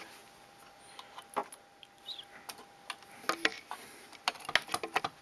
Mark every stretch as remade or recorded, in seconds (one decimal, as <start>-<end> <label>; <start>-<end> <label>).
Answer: 0.0-5.2 recorded